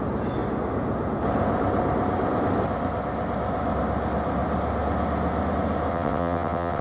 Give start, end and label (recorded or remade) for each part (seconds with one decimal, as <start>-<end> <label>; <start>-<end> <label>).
0.0-5.9 recorded; 5.9-6.8 remade